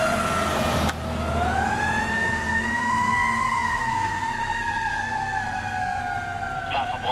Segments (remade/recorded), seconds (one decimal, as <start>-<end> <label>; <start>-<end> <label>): 0.0-2.1 recorded; 2.1-6.0 remade; 6.0-7.1 recorded